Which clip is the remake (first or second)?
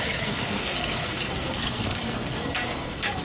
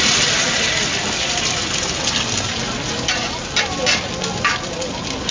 first